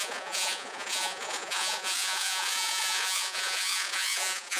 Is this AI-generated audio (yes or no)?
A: yes